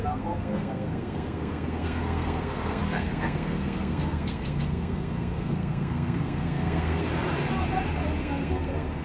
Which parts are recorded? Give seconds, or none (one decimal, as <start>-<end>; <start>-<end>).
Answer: 7.1-8.2